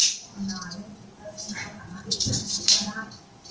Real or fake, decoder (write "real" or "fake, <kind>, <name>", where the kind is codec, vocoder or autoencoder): real